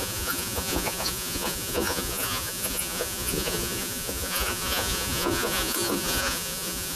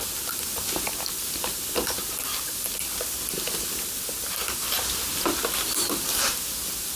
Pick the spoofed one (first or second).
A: first